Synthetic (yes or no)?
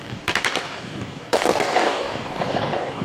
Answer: yes